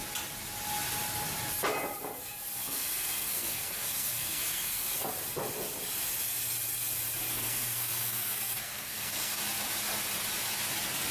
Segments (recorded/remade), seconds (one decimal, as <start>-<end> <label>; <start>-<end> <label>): 0.0-2.6 recorded; 2.6-5.1 remade; 5.1-7.3 recorded; 7.3-9.4 remade; 9.4-11.1 recorded